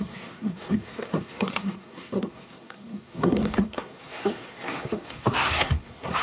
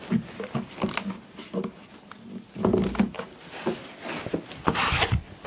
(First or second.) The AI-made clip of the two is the first